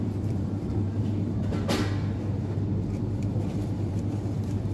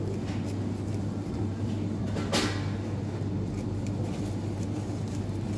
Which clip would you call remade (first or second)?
first